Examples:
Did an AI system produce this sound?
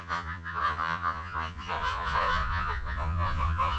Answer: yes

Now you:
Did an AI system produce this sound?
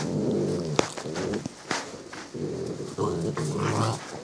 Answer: yes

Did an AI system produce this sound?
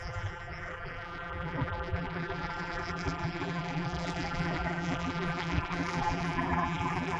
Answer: yes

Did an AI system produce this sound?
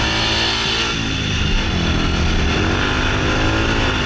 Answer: no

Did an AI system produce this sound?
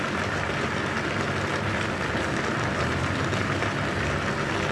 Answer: no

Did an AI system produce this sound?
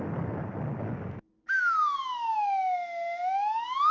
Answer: no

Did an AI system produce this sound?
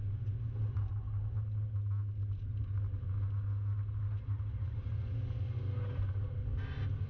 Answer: no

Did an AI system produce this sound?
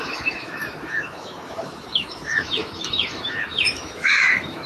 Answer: yes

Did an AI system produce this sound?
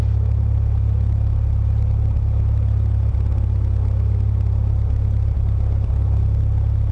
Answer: no